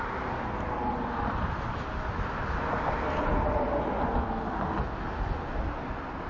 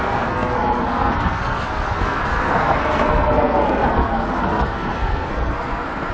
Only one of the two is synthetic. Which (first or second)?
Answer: second